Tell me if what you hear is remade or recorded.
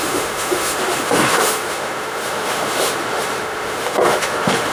remade